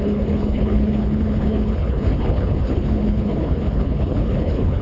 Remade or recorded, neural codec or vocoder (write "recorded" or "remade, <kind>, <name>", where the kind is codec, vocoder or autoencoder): remade, codec, HILCodec